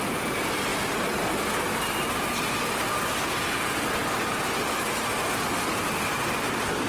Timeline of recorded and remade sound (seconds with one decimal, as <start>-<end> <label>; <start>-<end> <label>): 0.0-6.9 recorded